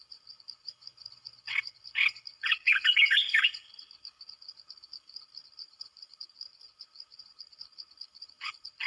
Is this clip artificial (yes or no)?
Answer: yes